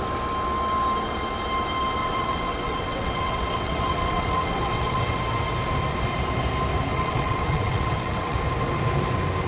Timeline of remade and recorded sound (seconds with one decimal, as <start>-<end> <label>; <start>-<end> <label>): 0.0-2.0 recorded; 2.0-5.2 remade; 5.2-6.9 recorded; 6.9-8.4 remade; 8.4-9.5 recorded